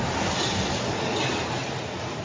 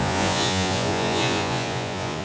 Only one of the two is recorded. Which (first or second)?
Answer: first